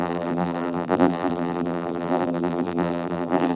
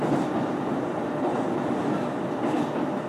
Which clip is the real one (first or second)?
second